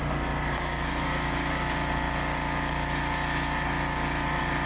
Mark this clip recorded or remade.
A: recorded